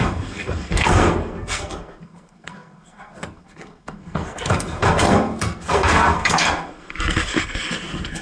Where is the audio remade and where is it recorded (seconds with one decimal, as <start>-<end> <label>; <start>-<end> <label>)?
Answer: 0.0-8.2 remade